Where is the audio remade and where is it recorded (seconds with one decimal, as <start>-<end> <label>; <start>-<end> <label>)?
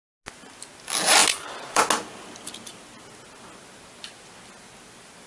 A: 0.0-1.2 recorded; 1.2-1.8 remade; 1.8-5.3 recorded